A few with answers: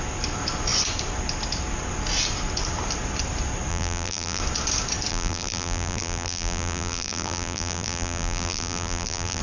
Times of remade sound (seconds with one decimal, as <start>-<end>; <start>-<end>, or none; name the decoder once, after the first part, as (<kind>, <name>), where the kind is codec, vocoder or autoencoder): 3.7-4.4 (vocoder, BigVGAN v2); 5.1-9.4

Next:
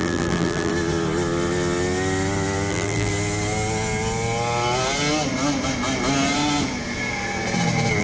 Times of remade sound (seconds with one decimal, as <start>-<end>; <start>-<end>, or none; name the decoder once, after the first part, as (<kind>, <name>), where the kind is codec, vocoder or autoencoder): 0.0-0.7 (vocoder, BigVGAN v2); 2.7-3.1

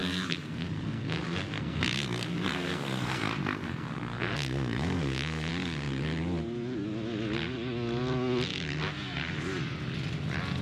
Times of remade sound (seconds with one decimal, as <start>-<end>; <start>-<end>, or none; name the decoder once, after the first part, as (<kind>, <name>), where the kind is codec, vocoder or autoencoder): 0.0-5.5 (codec, SNAC)

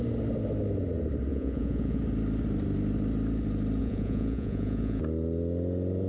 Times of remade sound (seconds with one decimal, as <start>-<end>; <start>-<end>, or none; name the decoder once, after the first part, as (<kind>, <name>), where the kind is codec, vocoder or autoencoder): 1.3-2.0 (vocoder, Vocos); 3.8-5.0